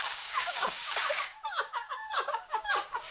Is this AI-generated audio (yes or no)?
yes